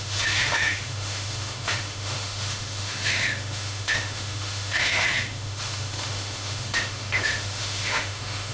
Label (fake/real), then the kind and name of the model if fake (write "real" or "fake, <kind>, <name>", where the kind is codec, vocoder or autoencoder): fake, autoencoder, DAC-VAE